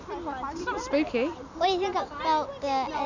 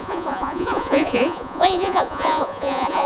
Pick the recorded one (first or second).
first